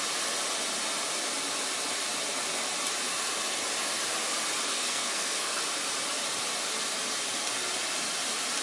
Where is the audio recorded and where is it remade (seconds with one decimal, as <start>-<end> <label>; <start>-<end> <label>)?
0.0-4.7 recorded; 4.7-5.6 remade; 5.6-8.6 recorded